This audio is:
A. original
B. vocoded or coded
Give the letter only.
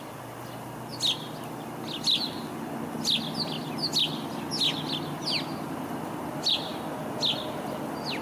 A